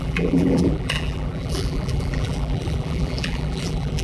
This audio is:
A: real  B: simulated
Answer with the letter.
B